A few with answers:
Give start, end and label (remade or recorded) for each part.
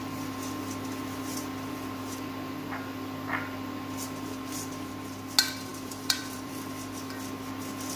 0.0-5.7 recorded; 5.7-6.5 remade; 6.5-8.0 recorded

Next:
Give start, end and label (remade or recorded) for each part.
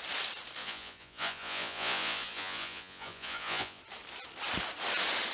0.0-0.6 recorded; 0.6-3.8 remade; 3.8-5.3 recorded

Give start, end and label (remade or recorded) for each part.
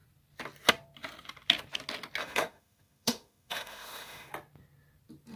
0.0-2.2 recorded; 2.2-4.3 remade; 4.3-5.4 recorded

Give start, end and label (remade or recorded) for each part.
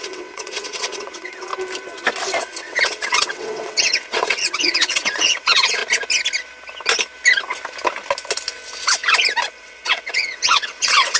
0.0-1.5 remade; 1.5-2.4 recorded; 2.4-5.8 remade; 5.8-9.5 recorded; 9.5-11.2 remade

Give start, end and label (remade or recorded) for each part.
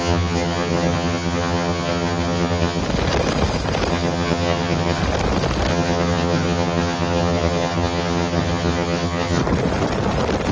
0.0-2.8 remade; 2.8-3.9 recorded; 3.9-5.0 remade; 5.0-5.7 recorded; 5.7-9.4 remade; 9.4-10.5 recorded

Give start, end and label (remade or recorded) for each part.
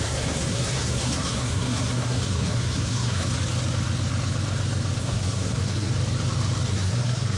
0.0-3.3 remade; 3.3-5.0 recorded; 5.0-5.9 remade; 5.9-6.7 recorded; 6.7-7.4 remade